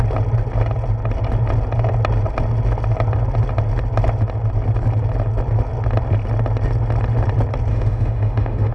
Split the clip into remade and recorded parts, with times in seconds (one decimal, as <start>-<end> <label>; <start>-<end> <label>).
0.0-7.7 recorded; 7.7-8.7 remade